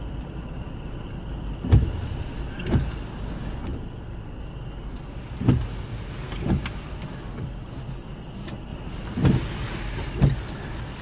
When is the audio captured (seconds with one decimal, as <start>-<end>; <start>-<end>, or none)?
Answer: 0.0-3.7; 4.3-8.7; 9.8-11.0